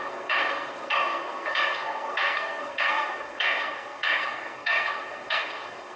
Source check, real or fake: fake